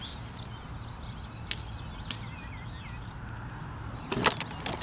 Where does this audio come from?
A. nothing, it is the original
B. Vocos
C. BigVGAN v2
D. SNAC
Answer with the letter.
A